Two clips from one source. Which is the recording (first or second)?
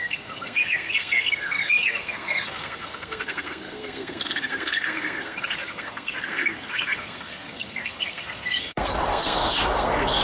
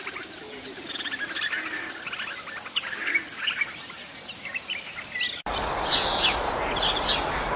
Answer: second